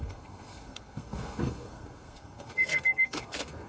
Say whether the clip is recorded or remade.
remade